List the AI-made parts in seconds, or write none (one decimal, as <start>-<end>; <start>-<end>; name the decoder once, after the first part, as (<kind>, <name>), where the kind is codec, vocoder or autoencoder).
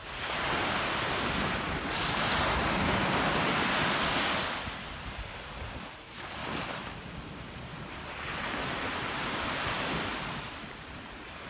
none